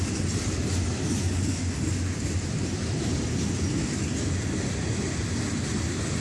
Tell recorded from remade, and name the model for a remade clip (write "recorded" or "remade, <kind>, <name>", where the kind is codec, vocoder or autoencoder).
recorded